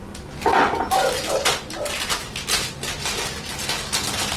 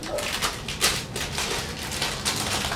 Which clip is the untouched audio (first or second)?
first